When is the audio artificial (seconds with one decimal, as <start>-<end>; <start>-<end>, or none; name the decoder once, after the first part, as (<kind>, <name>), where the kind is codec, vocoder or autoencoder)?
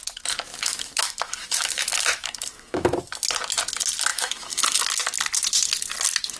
0.5-3.0 (autoencoder, DAC-VAE); 4.1-4.8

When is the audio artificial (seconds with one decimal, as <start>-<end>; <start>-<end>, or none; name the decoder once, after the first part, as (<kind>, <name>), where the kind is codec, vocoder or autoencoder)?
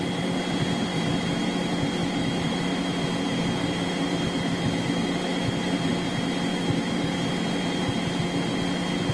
0.9-1.6 (autoencoder, DAC-VAE); 2.0-2.9; 3.6-5.5; 6.5-7.1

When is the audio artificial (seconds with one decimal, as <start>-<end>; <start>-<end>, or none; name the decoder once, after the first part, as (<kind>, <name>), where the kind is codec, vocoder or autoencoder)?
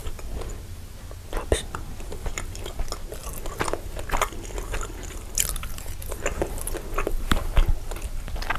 none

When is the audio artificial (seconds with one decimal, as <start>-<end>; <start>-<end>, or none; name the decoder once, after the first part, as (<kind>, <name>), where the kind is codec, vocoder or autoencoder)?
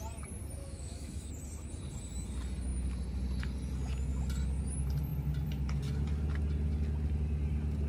0.6-1.3 (autoencoder, DAC-VAE)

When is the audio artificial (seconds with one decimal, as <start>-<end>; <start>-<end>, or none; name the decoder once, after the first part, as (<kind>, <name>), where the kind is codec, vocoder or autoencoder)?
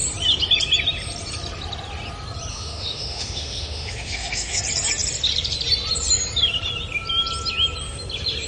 2.5-4.6 (autoencoder, DAC-VAE)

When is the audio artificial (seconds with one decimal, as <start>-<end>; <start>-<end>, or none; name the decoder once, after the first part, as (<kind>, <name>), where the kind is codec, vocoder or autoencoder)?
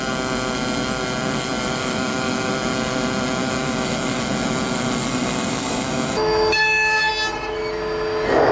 1.8-2.5 (autoencoder, DAC-VAE); 3.4-4.2; 5.1-7.1